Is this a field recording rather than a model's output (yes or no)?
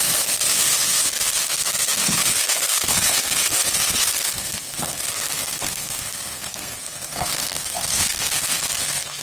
no